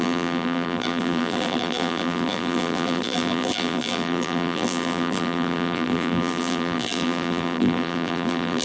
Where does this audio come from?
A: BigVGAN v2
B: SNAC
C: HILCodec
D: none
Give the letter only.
A